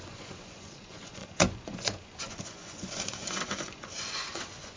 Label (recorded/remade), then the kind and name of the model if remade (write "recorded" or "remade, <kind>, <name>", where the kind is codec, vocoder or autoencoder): remade, vocoder, Vocos